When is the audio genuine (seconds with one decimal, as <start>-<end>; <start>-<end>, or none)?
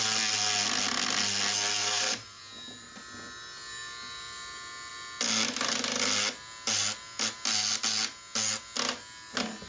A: 0.0-1.8; 2.4-9.7